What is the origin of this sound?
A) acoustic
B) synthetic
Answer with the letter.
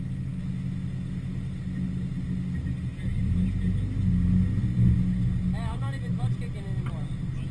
A